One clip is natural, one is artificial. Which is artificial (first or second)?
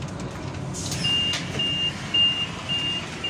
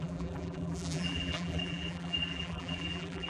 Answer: second